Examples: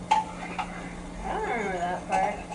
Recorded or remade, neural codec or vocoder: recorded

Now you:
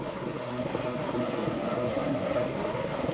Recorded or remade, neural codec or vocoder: remade, codec, SNAC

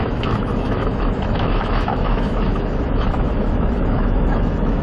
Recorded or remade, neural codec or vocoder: remade, autoencoder, DAC-VAE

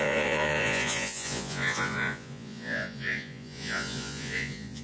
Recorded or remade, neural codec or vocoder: remade, vocoder, Vocos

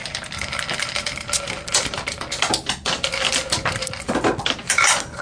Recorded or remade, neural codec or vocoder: recorded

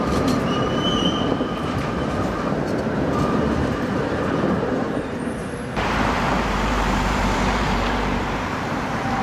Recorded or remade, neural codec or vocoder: remade, vocoder, BigVGAN v2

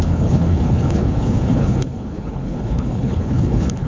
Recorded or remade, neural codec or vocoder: remade, codec, HILCodec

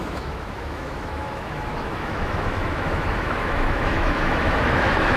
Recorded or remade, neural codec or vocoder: remade, autoencoder, DAC-VAE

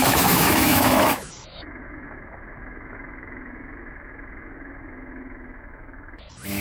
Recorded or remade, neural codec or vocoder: remade, autoencoder, DAC-VAE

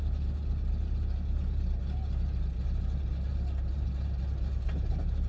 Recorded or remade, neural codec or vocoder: recorded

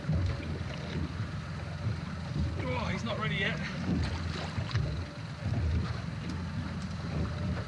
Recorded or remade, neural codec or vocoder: recorded